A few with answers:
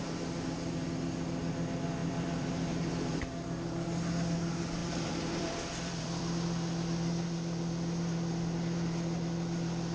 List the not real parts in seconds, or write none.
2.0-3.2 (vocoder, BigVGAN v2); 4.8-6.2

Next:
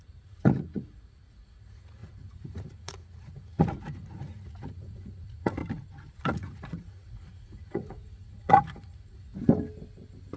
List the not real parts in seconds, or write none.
0.0-5.6 (vocoder, Vocos); 6.1-9.3

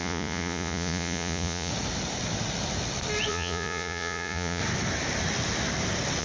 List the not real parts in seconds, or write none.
0.0-1.7 (vocoder, Vocos); 3.3-4.6

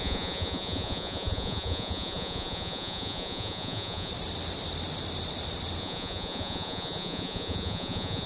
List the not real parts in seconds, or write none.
0.0-4.1 (vocoder, Vocos); 5.8-8.3